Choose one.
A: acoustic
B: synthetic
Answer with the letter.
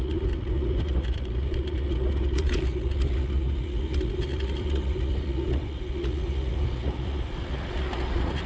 B